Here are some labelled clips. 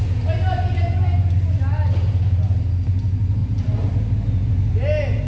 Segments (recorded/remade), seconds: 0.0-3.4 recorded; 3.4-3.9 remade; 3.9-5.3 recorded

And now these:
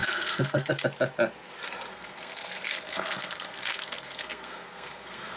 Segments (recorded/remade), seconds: 0.0-0.7 remade; 0.7-1.9 recorded; 1.9-5.4 remade

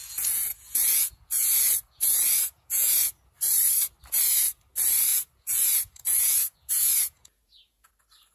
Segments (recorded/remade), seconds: 0.0-3.3 remade; 3.3-5.1 recorded; 5.1-7.9 remade; 7.9-8.3 recorded

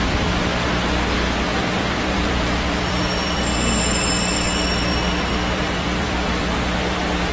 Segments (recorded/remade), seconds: 0.0-1.5 recorded; 1.5-3.4 remade; 3.4-4.9 recorded; 4.9-7.3 remade

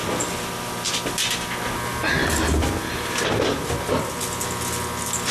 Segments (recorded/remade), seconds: 0.0-5.3 recorded

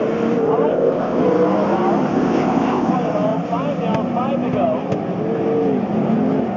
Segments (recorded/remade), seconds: 0.0-0.7 recorded; 0.7-1.2 remade; 1.2-2.1 recorded; 2.1-2.9 remade; 2.9-6.6 recorded